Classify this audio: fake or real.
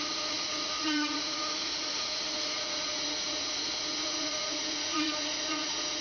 fake